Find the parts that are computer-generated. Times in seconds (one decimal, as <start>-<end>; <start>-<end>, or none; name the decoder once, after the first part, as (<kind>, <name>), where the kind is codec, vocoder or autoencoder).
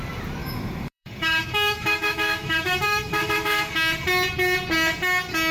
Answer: 0.4-3.7 (autoencoder, DAC-VAE)